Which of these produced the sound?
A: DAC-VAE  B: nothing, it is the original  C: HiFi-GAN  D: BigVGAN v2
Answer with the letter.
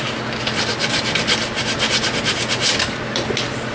B